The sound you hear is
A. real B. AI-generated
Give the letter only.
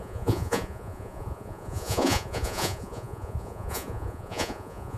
B